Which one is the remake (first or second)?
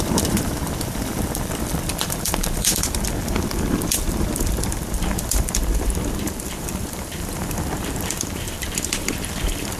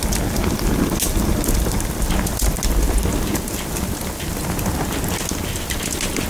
first